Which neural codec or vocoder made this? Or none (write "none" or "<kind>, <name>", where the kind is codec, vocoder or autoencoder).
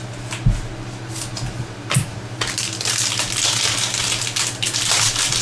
none